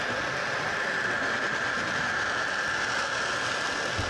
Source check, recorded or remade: recorded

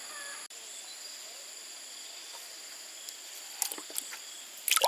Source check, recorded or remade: recorded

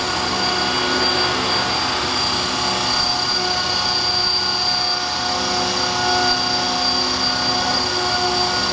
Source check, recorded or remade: recorded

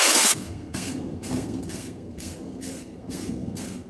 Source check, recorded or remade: remade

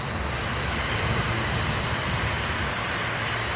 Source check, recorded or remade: recorded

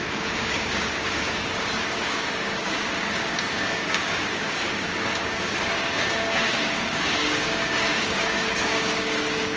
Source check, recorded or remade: remade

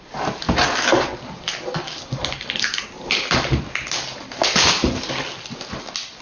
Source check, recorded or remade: recorded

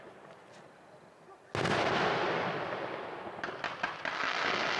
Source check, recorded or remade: recorded